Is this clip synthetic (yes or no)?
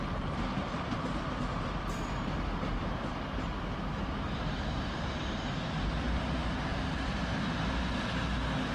yes